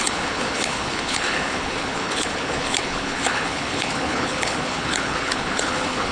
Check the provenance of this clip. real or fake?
fake